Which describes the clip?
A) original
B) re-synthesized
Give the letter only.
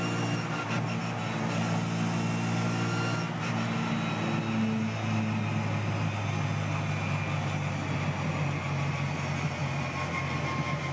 A